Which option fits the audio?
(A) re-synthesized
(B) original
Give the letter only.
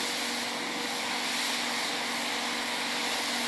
B